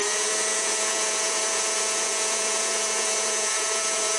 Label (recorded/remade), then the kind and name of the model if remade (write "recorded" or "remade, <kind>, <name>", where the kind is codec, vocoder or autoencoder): remade, vocoder, Vocos